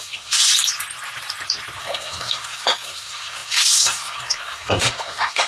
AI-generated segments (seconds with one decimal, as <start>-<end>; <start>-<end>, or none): 0.0-0.5; 1.8-5.5